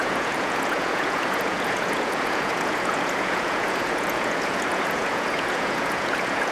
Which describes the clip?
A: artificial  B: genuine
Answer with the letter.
A